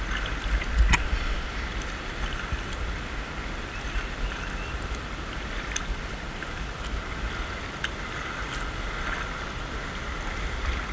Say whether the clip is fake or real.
real